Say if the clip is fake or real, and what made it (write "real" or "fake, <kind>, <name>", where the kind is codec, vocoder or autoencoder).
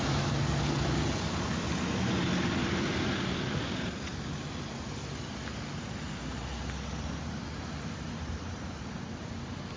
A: real